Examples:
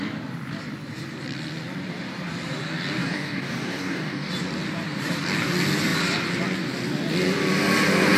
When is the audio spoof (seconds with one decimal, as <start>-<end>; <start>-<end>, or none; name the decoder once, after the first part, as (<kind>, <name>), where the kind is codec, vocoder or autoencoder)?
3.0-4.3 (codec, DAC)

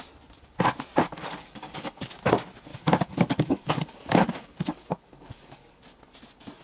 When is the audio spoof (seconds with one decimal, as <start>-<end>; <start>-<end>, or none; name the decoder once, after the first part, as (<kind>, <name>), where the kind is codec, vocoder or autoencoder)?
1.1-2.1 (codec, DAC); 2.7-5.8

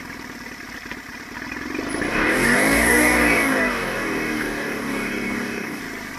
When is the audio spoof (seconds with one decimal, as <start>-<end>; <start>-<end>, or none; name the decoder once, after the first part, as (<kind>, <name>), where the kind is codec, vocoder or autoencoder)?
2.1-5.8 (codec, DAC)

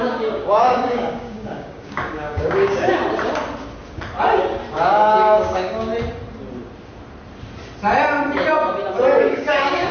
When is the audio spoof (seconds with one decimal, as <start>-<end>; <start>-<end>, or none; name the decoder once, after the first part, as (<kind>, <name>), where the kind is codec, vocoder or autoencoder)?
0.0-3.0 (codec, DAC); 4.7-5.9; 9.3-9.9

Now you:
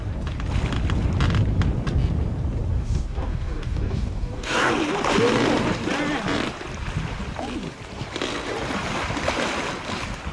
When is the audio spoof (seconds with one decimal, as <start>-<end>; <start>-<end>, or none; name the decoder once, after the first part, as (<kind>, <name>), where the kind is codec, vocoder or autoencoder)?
2.7-4.7 (codec, DAC)